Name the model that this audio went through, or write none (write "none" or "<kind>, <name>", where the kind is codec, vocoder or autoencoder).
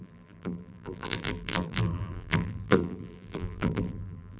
vocoder, BigVGAN v2